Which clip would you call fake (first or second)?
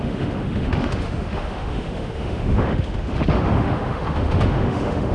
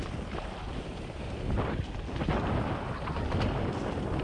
first